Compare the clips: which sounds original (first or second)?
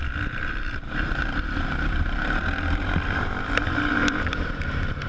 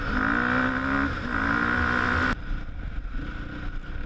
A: second